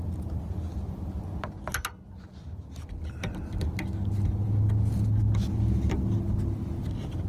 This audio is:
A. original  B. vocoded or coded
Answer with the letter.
A